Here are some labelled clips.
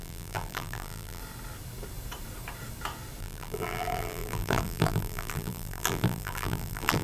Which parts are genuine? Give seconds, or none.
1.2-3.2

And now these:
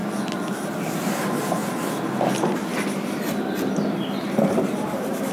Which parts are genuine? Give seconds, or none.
0.0-1.0; 1.6-4.8

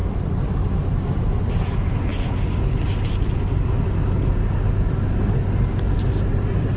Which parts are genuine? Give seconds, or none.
1.6-6.8

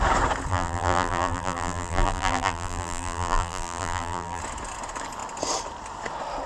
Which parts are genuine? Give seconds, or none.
0.0-0.5; 4.4-6.5